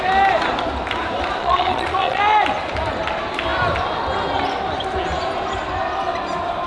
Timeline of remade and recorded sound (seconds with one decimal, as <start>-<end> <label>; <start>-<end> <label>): 0.0-1.4 recorded; 1.4-2.2 remade; 2.2-6.7 recorded